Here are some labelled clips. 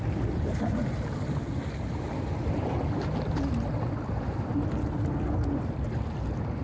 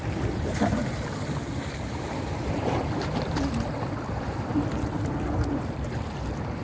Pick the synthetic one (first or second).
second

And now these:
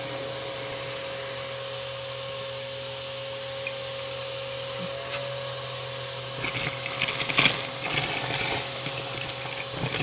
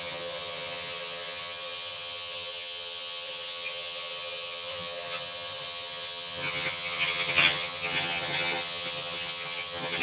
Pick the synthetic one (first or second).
second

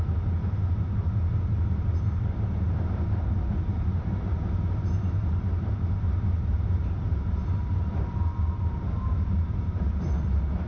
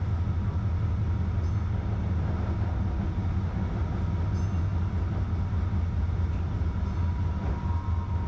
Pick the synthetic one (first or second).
first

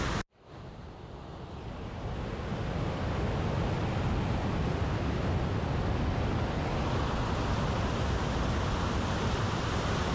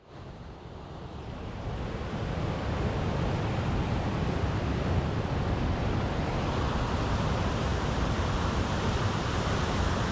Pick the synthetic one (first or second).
second